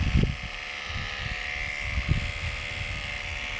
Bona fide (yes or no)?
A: yes